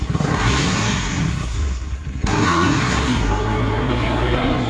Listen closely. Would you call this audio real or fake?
fake